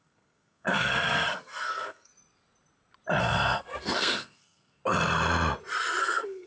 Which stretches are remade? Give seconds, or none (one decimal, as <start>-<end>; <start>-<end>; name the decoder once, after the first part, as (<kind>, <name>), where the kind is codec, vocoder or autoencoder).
0.0-2.1 (codec, SNAC); 3.2-4.8; 6.0-6.5